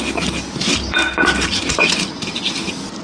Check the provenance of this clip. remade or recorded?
recorded